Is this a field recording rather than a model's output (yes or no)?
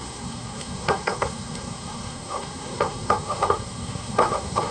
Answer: no